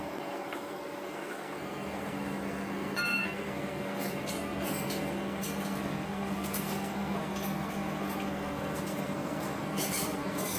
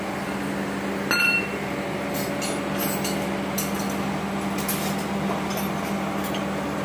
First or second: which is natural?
second